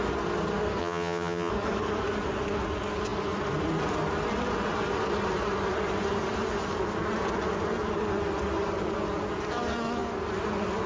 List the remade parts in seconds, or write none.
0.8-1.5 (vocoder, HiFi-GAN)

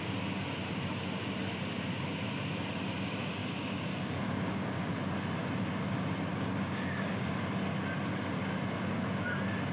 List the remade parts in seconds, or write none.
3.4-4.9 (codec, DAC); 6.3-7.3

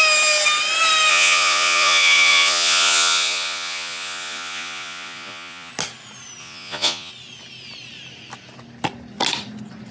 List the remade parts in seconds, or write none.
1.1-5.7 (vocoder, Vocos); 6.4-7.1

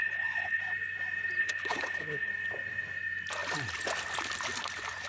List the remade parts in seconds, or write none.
0.0-0.6 (codec, HILCodec); 1.4-2.3